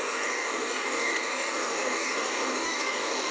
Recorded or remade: remade